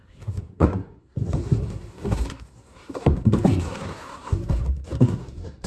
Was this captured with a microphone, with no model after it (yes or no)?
no